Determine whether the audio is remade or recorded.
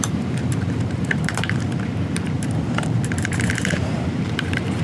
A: remade